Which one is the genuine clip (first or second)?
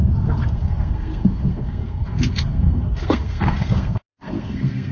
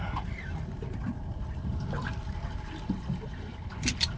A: second